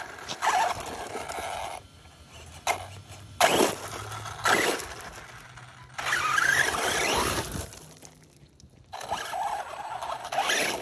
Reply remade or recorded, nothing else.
recorded